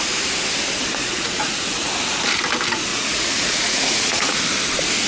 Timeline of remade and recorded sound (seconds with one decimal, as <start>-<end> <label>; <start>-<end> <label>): 0.0-1.0 recorded; 1.0-1.9 remade; 1.9-2.9 recorded; 2.9-4.4 remade; 4.4-5.1 recorded